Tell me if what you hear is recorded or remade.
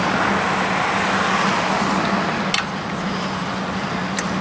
recorded